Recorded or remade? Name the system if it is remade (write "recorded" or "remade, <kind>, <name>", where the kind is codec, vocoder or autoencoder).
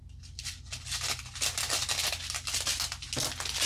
recorded